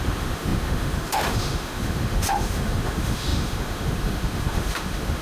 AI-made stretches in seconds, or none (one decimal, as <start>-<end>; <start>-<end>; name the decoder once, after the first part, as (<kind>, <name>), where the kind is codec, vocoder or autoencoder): 0.0-5.2 (autoencoder, DAC-VAE)